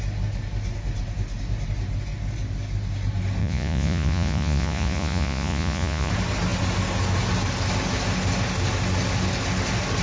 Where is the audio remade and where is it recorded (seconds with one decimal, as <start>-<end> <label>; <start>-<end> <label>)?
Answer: 0.0-3.4 recorded; 3.4-6.1 remade; 6.1-10.0 recorded